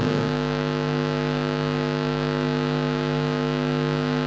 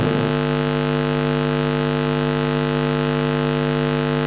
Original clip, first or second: second